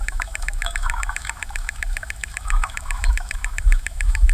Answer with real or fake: fake